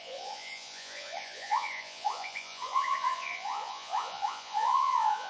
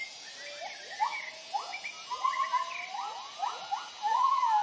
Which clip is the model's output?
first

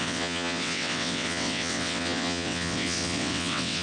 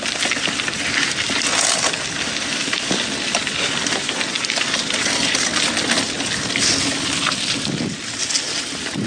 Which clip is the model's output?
first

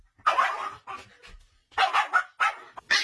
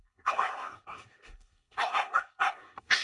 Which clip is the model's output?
second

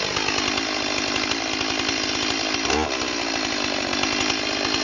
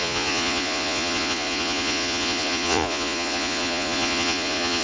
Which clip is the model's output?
second